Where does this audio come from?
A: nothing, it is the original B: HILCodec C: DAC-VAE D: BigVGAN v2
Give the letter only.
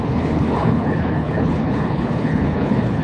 B